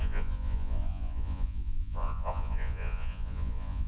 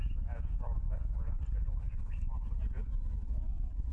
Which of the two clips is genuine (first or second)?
second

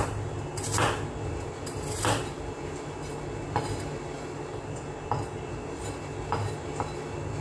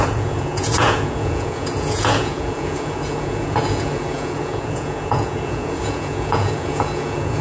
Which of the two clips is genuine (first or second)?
first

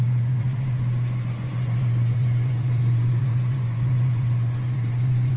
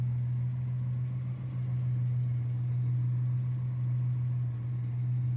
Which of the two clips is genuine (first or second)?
second